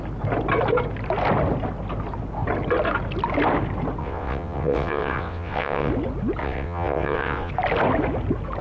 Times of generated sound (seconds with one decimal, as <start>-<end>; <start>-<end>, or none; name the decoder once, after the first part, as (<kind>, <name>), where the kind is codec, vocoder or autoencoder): 4.0-5.9 (vocoder, WaveNeXt); 6.4-7.5